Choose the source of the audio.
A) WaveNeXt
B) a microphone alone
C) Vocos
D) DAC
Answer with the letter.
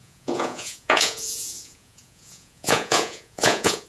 C